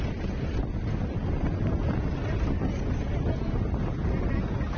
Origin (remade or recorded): recorded